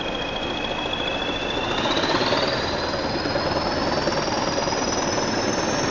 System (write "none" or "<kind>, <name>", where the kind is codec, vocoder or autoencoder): none